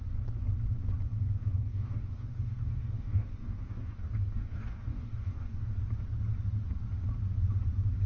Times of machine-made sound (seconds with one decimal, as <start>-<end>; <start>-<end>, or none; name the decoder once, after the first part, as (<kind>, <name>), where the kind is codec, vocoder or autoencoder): 1.4-5.6 (codec, DAC)